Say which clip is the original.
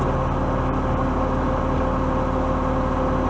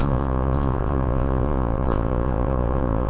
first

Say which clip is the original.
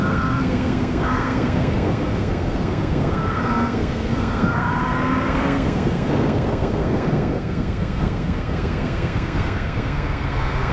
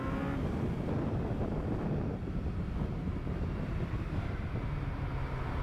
second